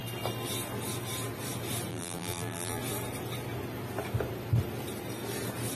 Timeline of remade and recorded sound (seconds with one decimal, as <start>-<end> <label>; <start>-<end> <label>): 0.0-1.9 recorded; 1.9-2.8 remade; 2.8-5.8 recorded